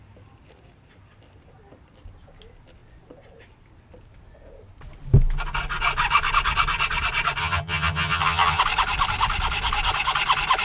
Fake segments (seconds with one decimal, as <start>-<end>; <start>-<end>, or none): 7.4-8.6